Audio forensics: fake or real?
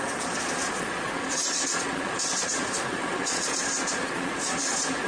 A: fake